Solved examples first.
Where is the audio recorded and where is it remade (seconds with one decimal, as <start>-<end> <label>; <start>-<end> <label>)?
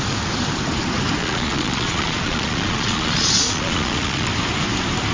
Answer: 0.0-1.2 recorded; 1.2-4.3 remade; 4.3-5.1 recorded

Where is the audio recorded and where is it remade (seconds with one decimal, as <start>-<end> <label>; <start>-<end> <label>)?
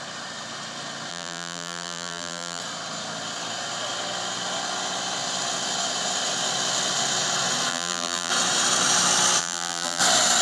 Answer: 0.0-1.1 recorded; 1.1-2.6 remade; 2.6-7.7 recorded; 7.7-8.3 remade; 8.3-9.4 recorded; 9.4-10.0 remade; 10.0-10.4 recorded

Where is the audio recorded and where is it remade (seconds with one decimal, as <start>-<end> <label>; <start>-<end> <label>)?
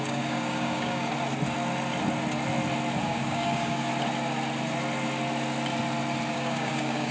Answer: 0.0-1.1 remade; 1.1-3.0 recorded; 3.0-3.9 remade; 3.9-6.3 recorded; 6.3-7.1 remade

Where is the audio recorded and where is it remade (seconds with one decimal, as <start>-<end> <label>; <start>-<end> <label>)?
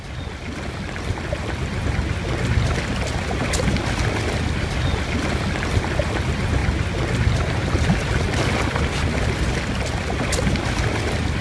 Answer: 0.0-11.4 recorded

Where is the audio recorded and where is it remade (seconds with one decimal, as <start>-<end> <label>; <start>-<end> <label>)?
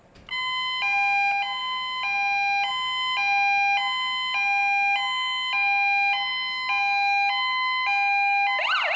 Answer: 0.0-9.0 recorded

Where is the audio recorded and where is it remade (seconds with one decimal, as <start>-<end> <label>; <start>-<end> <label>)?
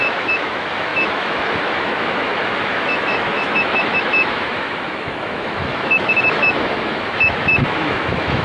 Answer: 0.0-8.4 remade